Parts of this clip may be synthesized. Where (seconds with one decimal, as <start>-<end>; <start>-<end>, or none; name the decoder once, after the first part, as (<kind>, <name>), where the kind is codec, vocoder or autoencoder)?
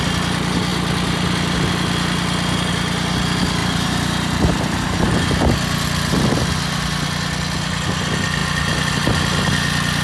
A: 3.6-5.3 (vocoder, BigVGAN v2)